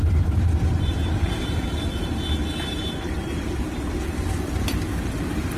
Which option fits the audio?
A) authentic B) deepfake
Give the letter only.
B